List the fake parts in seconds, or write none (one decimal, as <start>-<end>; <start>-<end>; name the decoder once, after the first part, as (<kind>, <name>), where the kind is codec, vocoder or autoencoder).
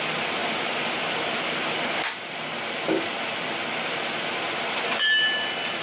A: 0.4-3.9 (vocoder, BigVGAN v2)